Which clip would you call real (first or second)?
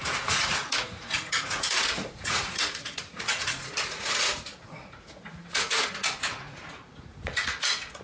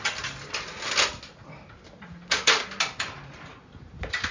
second